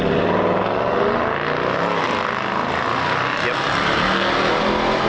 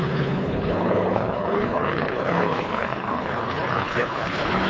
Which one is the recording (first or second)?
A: first